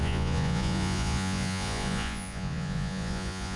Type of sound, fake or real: fake